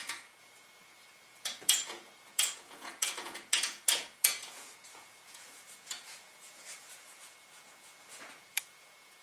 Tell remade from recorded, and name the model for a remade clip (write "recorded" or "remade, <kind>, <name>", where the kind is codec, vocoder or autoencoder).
remade, vocoder, Vocos